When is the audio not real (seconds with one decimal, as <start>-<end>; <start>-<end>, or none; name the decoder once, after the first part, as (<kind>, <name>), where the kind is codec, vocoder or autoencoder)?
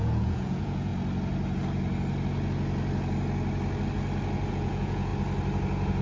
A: 0.0-0.9 (vocoder, Vocos); 4.5-5.1